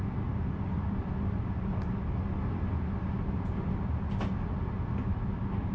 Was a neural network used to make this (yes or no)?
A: no